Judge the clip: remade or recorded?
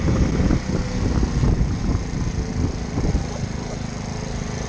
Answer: recorded